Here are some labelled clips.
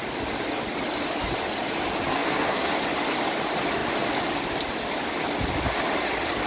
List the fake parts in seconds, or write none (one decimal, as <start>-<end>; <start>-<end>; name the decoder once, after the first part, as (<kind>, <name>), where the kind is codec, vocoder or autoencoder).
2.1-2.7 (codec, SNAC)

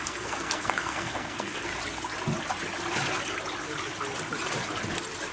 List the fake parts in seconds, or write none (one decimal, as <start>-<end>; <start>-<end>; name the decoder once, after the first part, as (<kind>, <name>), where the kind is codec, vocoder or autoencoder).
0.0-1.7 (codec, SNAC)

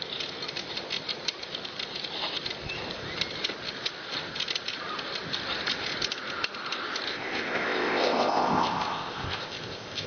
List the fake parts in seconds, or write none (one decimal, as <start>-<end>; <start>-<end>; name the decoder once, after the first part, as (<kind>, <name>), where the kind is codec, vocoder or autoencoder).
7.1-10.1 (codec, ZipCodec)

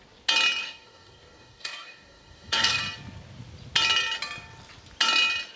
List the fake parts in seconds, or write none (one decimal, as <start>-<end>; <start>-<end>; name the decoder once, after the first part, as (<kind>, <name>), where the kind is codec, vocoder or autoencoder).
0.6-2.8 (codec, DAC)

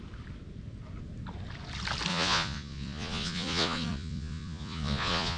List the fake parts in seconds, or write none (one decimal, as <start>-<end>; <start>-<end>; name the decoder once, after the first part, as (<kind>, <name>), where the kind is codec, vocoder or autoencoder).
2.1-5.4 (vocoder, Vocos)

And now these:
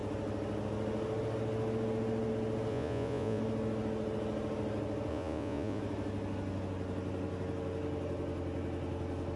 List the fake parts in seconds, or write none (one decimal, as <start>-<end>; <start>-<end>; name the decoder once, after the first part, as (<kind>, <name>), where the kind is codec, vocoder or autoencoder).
2.7-3.4 (vocoder, Vocos); 5.1-5.8

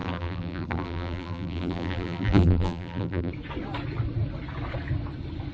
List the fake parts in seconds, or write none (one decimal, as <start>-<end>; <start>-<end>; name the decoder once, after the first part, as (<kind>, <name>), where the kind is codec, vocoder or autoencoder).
0.0-3.3 (vocoder, BigVGAN v2)

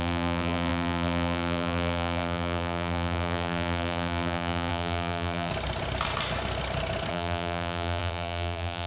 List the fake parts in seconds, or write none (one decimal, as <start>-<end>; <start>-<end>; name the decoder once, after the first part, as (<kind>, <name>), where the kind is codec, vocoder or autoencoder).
0.0-5.5 (vocoder, BigVGAN v2); 7.1-8.9